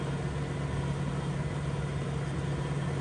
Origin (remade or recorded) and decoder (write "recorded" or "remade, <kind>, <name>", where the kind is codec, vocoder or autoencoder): recorded